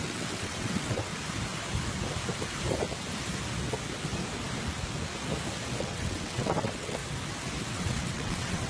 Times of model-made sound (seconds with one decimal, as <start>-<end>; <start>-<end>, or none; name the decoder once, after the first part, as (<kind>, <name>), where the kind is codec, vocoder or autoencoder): 0.0-1.1 (vocoder, WaveNeXt); 5.8-7.0; 7.7-8.7